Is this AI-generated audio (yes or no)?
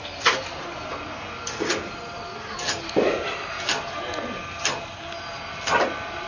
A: no